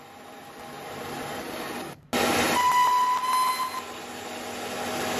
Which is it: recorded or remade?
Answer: recorded